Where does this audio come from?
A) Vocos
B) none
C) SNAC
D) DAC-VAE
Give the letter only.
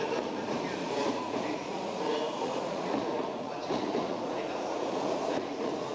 A